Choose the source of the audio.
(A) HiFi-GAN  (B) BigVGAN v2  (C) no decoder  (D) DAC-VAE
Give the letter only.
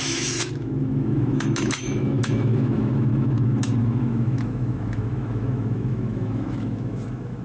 D